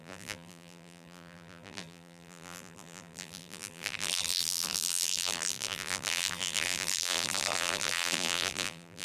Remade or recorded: remade